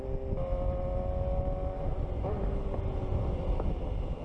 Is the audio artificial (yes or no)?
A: no